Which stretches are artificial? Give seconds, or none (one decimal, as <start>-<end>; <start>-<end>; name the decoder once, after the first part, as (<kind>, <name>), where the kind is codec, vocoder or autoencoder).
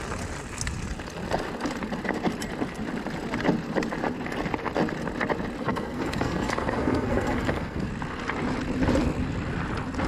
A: 5.6-7.9 (codec, SNAC)